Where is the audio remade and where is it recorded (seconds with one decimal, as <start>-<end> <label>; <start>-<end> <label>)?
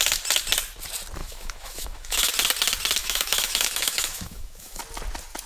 0.0-1.2 recorded; 1.2-2.3 remade; 2.3-3.0 recorded; 3.0-4.8 remade; 4.8-5.5 recorded